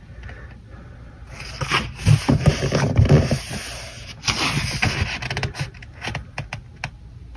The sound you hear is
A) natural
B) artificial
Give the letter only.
A